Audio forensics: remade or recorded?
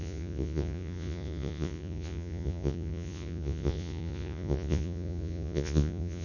remade